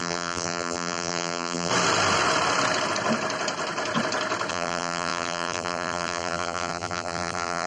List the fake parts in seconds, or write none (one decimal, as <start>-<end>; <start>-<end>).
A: 0.0-1.7; 4.5-7.7